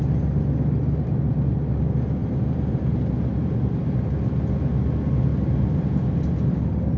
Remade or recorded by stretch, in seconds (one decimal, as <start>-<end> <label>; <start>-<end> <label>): 0.0-2.2 recorded; 2.2-3.6 remade; 3.6-5.3 recorded; 5.3-6.6 remade; 6.6-7.0 recorded